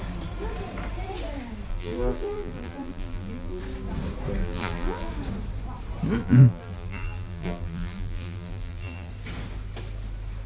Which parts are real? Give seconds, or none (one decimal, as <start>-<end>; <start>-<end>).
0.0-1.7; 3.6-4.4; 5.1-6.2; 9.1-10.5